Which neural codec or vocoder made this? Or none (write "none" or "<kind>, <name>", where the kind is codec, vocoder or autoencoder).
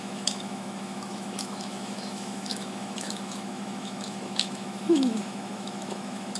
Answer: autoencoder, DAC-VAE